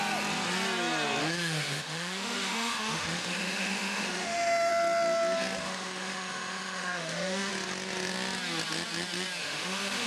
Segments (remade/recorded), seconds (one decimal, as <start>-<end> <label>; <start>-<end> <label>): 0.0-1.2 recorded; 1.2-4.7 remade; 4.7-5.6 recorded; 5.6-7.5 remade; 7.5-9.4 recorded; 9.4-10.1 remade